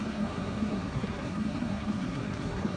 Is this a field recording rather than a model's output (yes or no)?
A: no